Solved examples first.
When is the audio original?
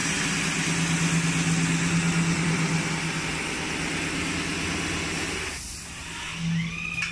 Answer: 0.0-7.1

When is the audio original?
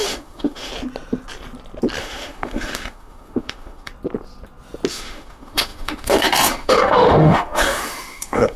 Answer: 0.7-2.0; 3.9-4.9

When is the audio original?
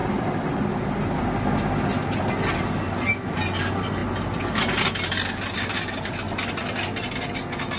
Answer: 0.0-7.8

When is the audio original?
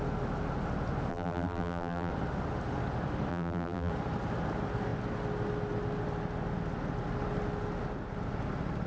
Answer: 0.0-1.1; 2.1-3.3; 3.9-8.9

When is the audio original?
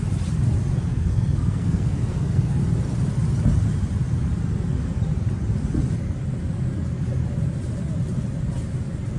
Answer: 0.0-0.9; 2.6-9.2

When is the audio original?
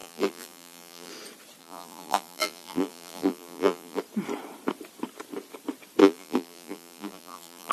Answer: 1.1-1.6; 4.0-6.0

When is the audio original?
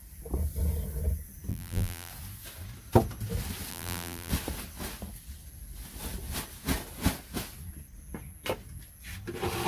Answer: 0.0-1.5; 2.1-3.7; 4.3-9.7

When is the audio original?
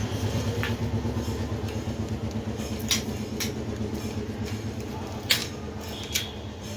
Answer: 0.8-4.9; 5.4-6.1